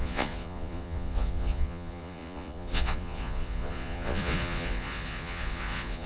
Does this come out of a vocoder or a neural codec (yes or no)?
yes